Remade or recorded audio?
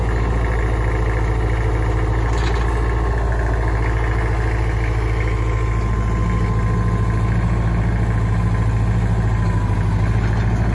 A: recorded